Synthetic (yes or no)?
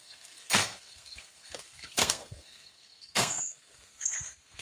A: yes